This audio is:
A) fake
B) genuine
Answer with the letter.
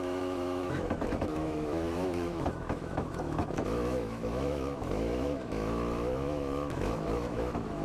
A